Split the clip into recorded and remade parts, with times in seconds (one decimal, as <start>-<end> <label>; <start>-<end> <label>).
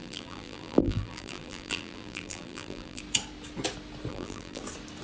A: 0.0-3.0 remade; 3.0-4.1 recorded; 4.1-4.6 remade; 4.6-5.0 recorded